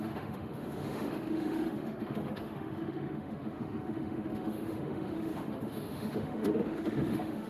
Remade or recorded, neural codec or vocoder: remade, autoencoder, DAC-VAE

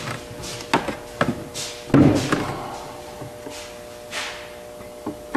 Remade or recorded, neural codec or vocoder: recorded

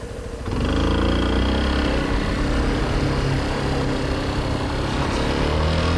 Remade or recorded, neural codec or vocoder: recorded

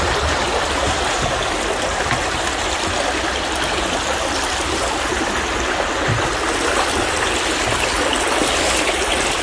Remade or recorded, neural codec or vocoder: recorded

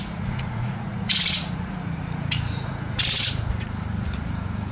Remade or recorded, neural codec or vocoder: remade, vocoder, Vocos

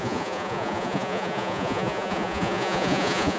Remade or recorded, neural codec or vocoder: remade, vocoder, Vocos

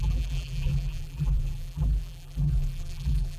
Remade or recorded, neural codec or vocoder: remade, vocoder, BigVGAN v2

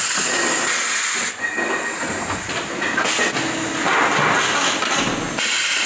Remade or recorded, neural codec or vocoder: recorded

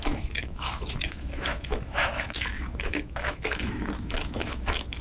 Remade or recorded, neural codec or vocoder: remade, autoencoder, DAC-VAE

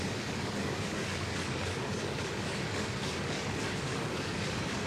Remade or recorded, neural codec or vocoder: remade, codec, DAC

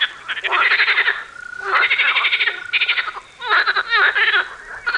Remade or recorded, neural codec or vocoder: recorded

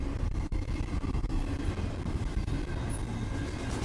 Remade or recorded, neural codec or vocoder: recorded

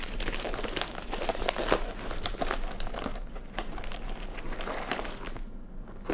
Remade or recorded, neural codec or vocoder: recorded